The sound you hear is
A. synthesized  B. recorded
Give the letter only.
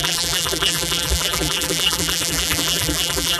A